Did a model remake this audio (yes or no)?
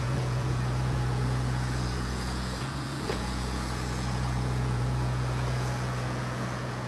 yes